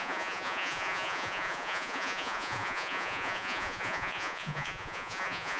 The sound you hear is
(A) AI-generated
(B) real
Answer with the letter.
A